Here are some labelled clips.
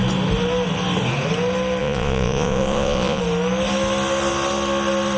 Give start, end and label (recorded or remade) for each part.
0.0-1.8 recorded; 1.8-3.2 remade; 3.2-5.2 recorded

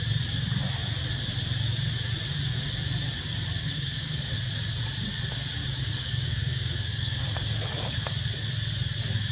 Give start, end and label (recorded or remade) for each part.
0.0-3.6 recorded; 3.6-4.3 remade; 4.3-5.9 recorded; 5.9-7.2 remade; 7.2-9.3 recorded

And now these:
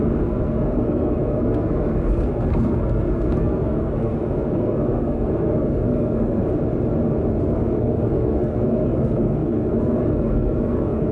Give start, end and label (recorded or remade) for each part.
0.0-6.4 remade; 6.4-7.4 recorded; 7.4-11.1 remade

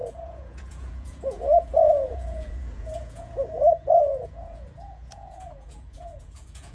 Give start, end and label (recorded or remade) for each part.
0.0-6.7 remade